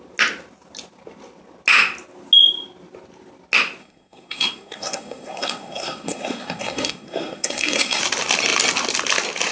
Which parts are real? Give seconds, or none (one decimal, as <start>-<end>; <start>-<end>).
0.0-3.8; 8.0-9.5